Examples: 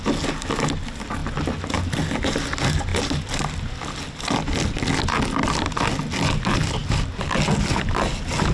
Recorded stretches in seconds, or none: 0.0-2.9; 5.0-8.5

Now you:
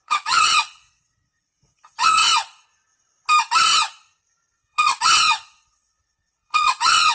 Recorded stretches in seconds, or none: 2.2-4.5